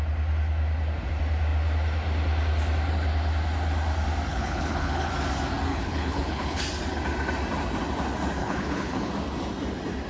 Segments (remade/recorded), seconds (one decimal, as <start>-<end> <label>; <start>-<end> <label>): 0.0-4.3 recorded; 4.3-5.1 remade; 5.1-5.7 recorded; 5.7-6.6 remade; 6.6-8.4 recorded; 8.4-9.1 remade; 9.1-10.1 recorded